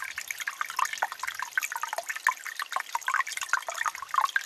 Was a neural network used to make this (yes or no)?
no